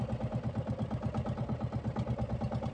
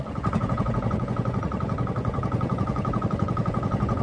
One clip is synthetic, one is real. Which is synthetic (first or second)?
second